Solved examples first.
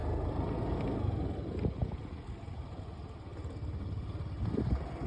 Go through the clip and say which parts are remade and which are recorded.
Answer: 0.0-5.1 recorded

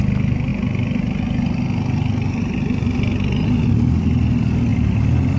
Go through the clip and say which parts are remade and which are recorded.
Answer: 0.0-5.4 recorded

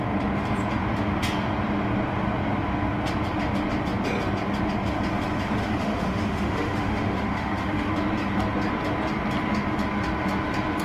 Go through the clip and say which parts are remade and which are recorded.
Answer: 0.0-5.6 recorded; 5.6-7.9 remade; 7.9-10.8 recorded

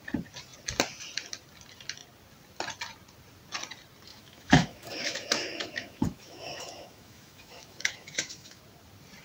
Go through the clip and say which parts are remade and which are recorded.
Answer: 0.0-4.1 recorded; 4.1-8.6 remade; 8.6-9.2 recorded

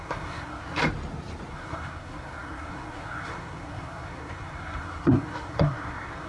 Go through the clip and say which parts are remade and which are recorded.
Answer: 0.0-0.8 remade; 0.8-1.5 recorded; 1.5-6.3 remade